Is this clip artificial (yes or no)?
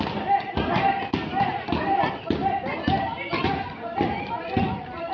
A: no